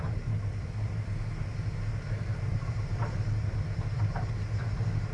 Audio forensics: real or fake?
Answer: real